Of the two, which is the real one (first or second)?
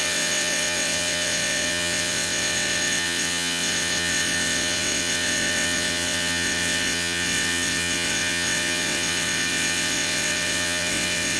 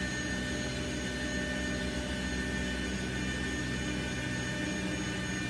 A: second